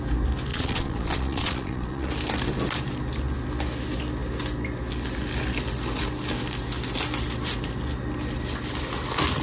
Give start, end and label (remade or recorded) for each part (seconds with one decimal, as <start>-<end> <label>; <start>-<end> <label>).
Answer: 0.0-0.5 recorded; 0.5-2.1 remade; 2.1-9.4 recorded